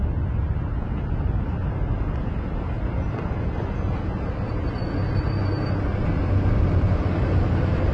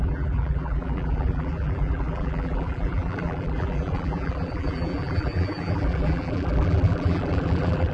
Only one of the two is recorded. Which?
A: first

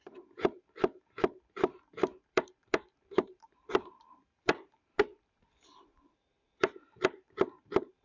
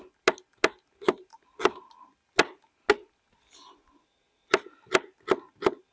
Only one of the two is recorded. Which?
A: second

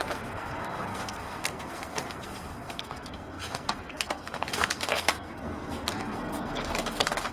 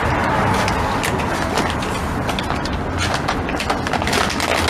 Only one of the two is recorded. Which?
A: second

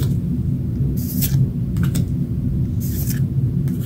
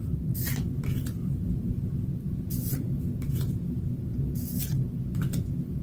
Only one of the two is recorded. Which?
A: first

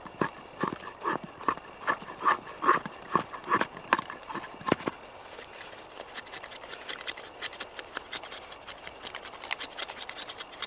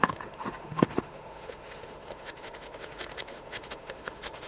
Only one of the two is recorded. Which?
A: first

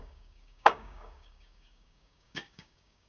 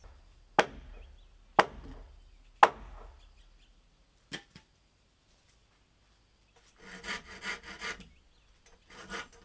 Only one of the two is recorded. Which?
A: second